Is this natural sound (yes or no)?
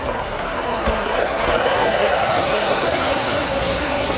no